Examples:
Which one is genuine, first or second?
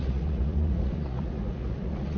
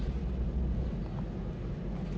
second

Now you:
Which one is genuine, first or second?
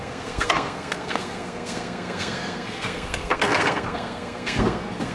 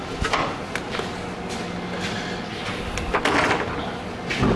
second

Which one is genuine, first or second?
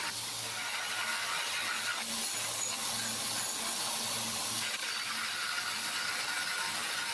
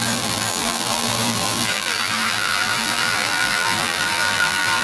first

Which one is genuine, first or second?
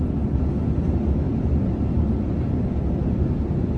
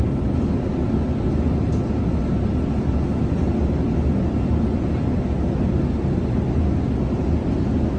second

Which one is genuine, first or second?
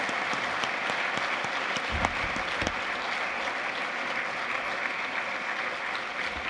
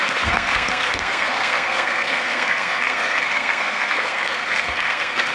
first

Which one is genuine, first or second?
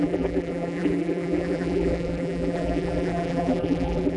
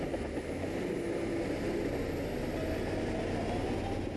second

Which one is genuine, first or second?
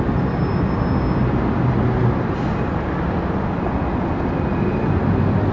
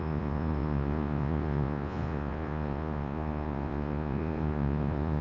first